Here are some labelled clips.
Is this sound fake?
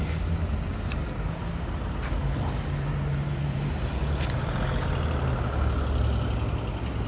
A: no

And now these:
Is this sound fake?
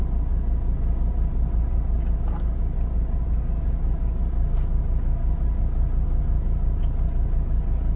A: no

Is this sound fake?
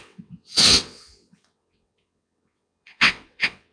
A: yes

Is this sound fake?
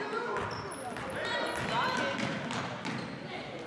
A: no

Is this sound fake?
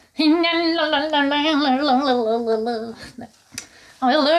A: no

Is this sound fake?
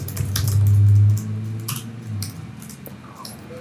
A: no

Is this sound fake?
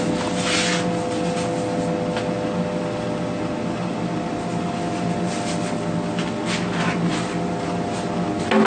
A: no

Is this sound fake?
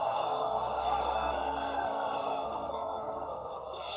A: yes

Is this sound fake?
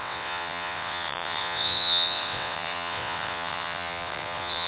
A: yes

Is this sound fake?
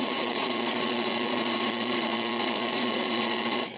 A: yes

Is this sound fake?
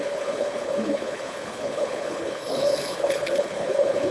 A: yes